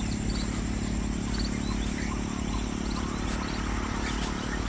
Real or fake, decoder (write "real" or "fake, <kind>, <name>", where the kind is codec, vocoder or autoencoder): real